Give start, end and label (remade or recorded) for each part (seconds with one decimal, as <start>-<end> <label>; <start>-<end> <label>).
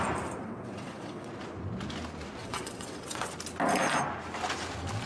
0.0-0.4 recorded; 0.4-1.3 remade; 1.3-2.4 recorded; 2.4-3.3 remade; 3.3-5.1 recorded